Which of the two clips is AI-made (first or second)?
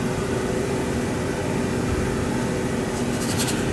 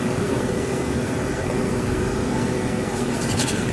second